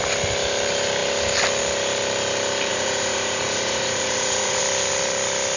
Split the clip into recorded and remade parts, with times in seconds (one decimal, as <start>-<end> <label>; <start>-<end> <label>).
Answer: 0.0-2.7 recorded; 2.7-4.6 remade; 4.6-5.6 recorded